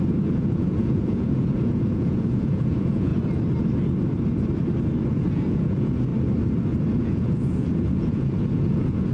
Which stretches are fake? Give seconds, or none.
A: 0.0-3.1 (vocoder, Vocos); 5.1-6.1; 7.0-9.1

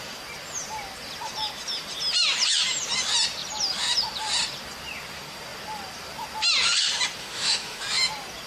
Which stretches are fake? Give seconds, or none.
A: 7.2-7.8 (autoencoder, DAC-VAE)